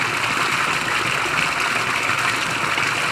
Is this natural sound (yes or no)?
yes